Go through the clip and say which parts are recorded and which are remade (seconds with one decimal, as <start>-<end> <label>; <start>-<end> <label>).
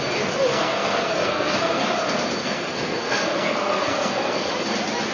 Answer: 0.0-0.5 recorded; 0.5-1.9 remade; 1.9-2.4 recorded; 2.4-4.5 remade; 4.5-5.1 recorded